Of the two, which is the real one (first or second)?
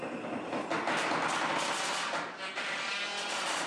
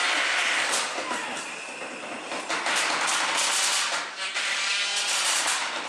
first